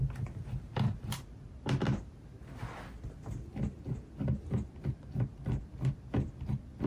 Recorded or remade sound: recorded